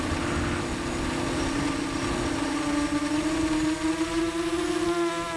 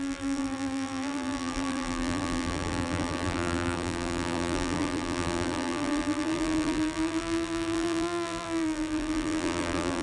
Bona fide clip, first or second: first